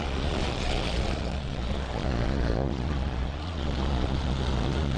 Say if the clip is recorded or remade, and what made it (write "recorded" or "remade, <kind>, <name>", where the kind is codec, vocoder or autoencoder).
remade, vocoder, Vocos